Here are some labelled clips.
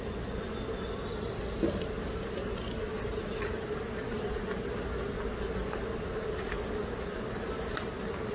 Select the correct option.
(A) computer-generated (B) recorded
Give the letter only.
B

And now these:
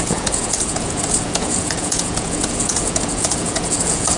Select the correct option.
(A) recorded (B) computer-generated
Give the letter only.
B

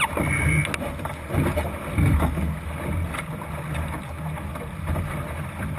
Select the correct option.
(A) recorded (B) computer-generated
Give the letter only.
A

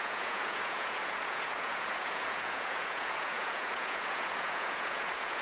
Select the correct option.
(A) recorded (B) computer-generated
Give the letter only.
B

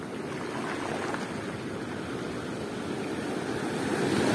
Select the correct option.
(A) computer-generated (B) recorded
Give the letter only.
B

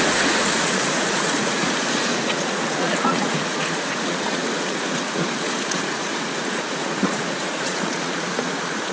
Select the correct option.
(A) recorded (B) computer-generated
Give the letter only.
B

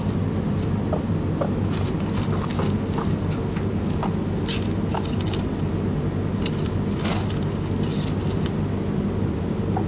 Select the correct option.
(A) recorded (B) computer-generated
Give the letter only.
A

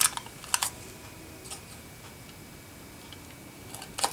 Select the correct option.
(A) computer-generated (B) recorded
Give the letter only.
B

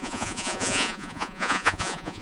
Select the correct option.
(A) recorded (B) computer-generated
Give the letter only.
B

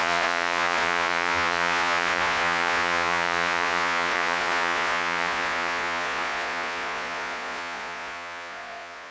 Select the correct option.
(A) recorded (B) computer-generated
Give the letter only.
B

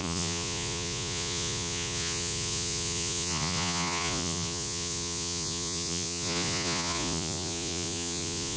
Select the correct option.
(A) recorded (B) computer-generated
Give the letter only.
B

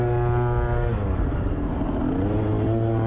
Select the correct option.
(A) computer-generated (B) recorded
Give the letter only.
B